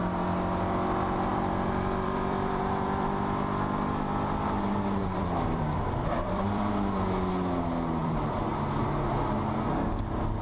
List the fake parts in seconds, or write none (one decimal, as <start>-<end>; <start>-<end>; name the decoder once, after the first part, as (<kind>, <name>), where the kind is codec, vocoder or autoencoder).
1.3-3.4 (vocoder, BigVGAN v2); 5.0-6.7; 8.0-8.8